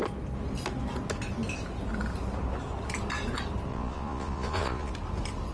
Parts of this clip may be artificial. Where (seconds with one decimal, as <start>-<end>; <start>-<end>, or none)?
3.7-4.9